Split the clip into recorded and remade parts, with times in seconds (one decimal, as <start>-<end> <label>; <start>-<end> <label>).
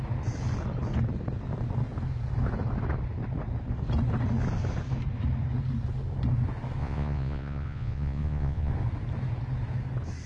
0.0-6.8 recorded; 6.8-8.7 remade; 8.7-10.3 recorded